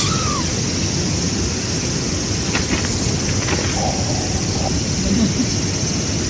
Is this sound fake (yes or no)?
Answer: no